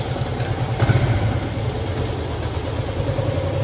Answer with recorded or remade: recorded